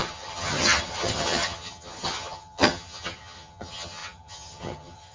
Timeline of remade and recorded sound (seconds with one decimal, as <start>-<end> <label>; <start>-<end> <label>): 0.0-5.1 remade